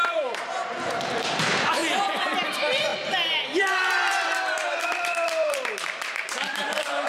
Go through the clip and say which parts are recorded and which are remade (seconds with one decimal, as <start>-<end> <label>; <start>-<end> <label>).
0.0-1.8 remade; 1.8-2.5 recorded; 2.5-2.9 remade; 2.9-3.6 recorded; 3.6-7.1 remade